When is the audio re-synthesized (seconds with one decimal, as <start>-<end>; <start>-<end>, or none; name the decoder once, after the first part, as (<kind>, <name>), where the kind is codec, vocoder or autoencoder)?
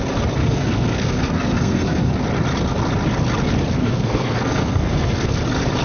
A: 0.4-2.1 (codec, SNAC); 3.8-5.3